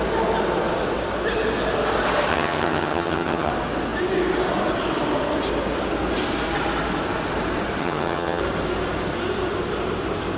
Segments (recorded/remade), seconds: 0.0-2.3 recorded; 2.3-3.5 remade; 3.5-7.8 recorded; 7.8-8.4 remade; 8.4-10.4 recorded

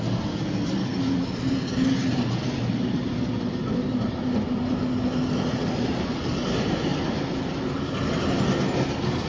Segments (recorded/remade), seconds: 0.0-9.3 recorded

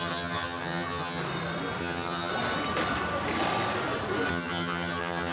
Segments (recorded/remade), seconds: 0.0-1.2 remade; 1.2-1.8 recorded; 1.8-2.3 remade; 2.3-4.3 recorded; 4.3-5.3 remade